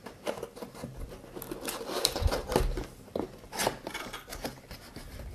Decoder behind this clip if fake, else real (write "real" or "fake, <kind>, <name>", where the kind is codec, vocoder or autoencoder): real